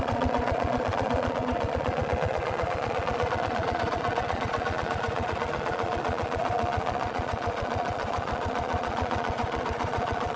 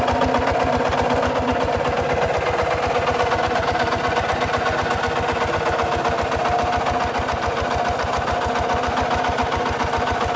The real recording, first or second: second